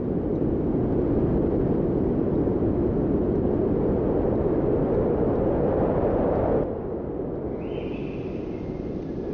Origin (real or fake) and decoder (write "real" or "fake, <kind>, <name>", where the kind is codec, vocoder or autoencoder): real